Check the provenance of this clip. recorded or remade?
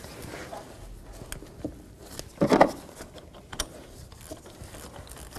recorded